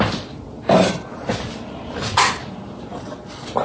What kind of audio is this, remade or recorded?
remade